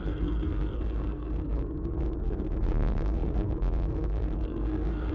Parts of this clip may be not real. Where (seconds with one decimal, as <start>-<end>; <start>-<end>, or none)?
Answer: 0.0-5.1